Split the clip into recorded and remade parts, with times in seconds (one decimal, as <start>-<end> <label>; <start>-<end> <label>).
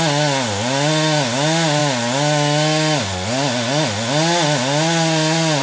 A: 0.0-5.6 recorded